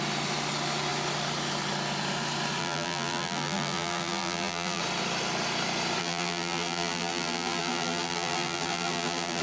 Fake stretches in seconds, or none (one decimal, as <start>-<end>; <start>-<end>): 2.6-4.8; 6.0-9.4